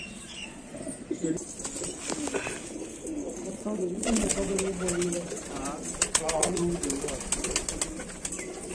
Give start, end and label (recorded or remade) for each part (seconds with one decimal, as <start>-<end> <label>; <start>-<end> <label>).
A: 0.0-0.7 remade; 0.7-3.5 recorded; 3.5-4.3 remade; 4.3-6.0 recorded; 6.0-6.6 remade; 6.6-8.7 recorded